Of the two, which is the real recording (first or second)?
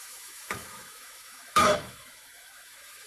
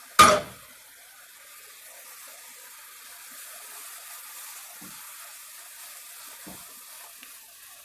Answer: second